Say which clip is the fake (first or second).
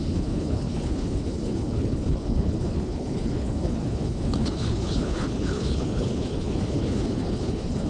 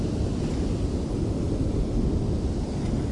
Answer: first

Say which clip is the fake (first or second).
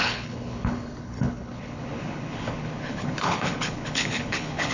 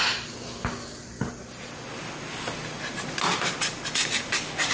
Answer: first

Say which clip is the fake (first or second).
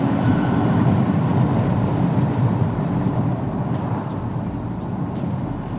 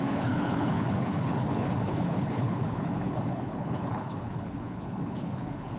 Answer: second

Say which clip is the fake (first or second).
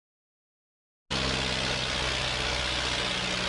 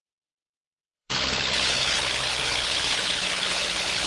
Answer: second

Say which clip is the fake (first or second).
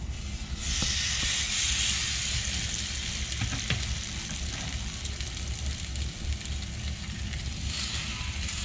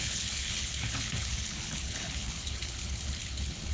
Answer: second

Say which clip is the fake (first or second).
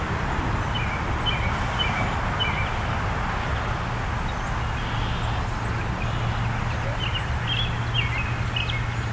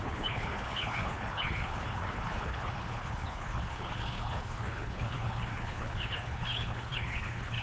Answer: second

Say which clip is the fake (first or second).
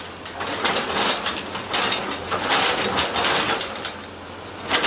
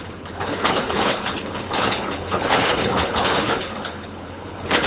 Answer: second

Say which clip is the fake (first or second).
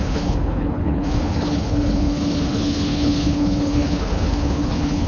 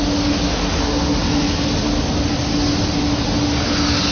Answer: first